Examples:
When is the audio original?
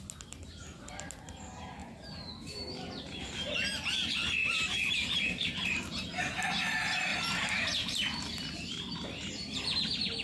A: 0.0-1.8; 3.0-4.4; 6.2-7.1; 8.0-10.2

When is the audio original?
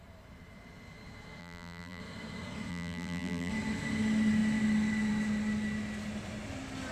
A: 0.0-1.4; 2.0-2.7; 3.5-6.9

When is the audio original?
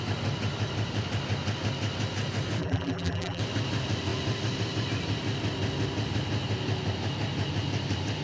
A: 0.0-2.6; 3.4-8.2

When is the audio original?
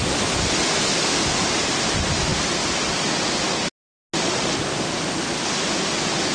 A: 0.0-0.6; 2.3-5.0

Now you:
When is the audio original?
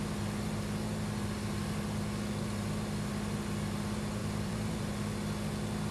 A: 0.0-4.2; 4.8-5.9